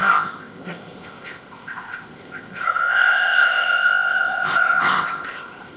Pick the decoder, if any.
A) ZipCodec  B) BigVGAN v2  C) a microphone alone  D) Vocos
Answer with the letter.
A